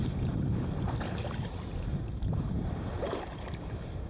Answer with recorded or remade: remade